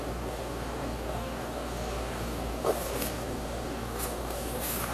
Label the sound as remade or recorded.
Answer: remade